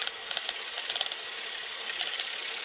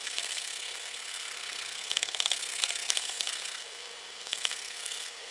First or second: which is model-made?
second